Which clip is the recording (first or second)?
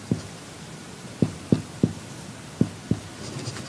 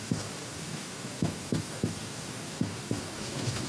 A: first